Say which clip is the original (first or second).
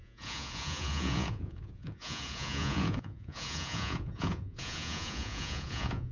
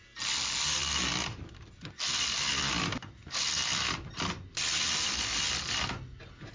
second